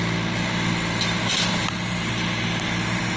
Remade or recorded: recorded